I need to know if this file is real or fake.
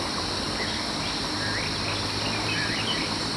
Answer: real